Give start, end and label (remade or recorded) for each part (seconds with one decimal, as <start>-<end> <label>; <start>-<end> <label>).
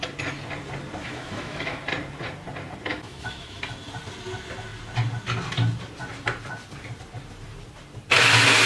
0.0-1.0 recorded; 1.0-1.8 remade; 1.8-2.9 recorded; 2.9-3.6 remade; 3.6-8.7 recorded